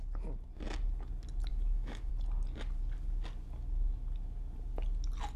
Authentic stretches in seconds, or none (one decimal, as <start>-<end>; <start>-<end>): 0.0-1.5; 2.1-5.4